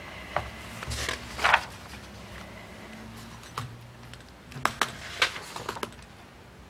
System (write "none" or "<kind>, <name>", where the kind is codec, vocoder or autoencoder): none